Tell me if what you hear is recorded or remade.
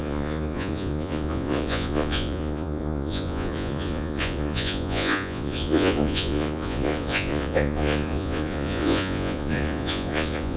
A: remade